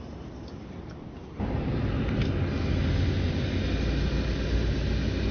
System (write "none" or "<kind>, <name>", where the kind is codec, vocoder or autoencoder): none